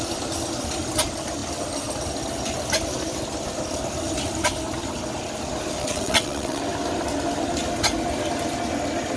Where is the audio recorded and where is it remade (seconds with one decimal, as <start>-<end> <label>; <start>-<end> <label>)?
0.0-5.8 recorded; 5.8-6.6 remade; 6.6-9.2 recorded